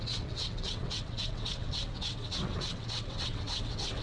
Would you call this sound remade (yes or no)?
yes